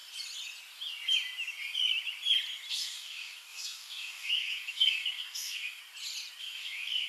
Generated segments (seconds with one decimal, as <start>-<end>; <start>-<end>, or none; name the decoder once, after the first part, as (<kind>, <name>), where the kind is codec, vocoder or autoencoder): 2.7-5.8 (codec, DAC); 6.4-7.1